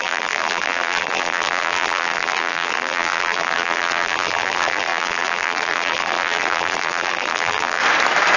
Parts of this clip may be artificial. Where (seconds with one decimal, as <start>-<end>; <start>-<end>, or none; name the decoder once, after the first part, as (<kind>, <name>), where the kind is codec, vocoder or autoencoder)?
0.0-7.8 (vocoder, BigVGAN v2)